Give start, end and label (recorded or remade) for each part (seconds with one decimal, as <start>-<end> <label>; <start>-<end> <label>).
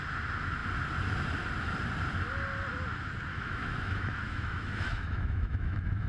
0.0-3.3 recorded; 3.3-6.1 remade